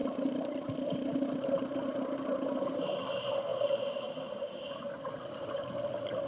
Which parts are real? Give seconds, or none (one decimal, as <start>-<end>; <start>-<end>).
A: 0.7-3.5; 5.1-6.3